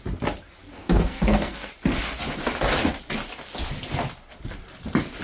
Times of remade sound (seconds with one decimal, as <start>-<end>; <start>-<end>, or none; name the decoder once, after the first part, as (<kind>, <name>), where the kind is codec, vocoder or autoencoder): 0.6-1.7 (codec, SNAC)